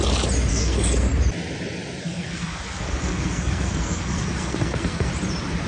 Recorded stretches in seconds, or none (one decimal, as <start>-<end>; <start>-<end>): 0.0-0.5; 1.1-2.0; 5.1-5.7